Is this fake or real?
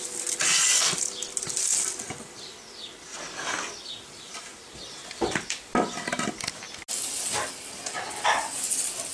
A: real